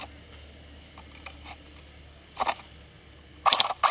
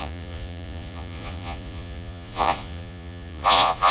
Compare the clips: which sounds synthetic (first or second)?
second